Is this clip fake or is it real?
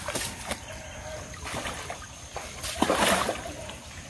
real